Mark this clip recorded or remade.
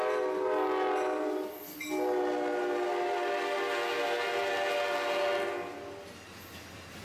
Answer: recorded